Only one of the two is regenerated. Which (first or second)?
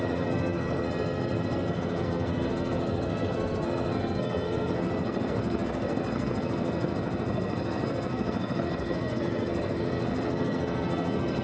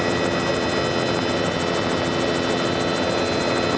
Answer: first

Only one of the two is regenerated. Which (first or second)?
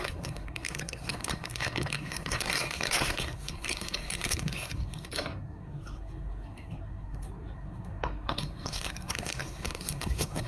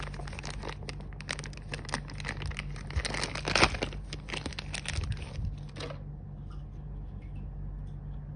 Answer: first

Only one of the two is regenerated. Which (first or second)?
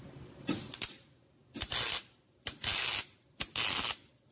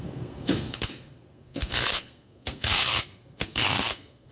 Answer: second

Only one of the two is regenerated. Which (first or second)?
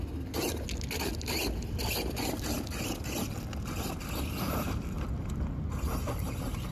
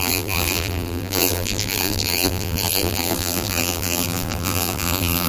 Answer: second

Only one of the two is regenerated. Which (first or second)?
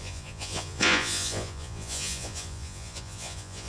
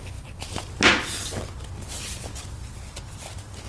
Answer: first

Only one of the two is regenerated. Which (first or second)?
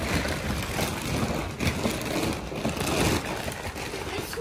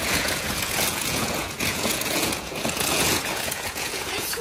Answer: second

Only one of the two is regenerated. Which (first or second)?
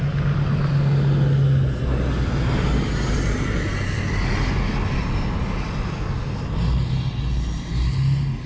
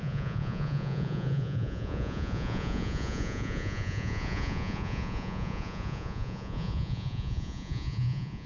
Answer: second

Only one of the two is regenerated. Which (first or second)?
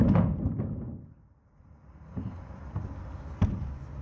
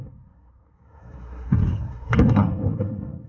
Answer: second